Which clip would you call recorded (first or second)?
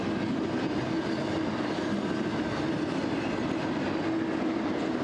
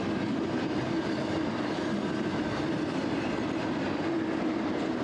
first